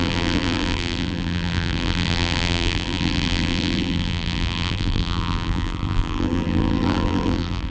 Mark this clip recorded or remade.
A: remade